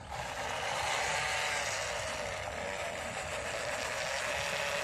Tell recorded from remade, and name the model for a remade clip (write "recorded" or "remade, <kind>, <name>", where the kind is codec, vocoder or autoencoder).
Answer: recorded